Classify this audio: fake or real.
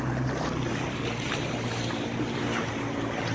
real